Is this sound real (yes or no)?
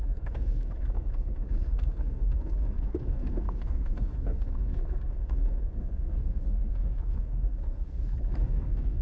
no